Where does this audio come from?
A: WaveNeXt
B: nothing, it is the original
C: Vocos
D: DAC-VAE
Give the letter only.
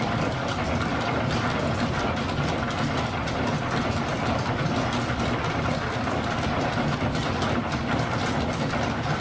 B